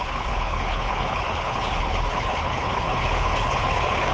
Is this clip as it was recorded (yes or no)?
no